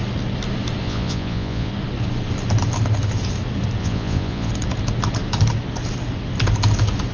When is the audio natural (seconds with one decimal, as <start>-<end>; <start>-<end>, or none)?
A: 0.0-0.8; 1.7-3.8; 4.5-7.1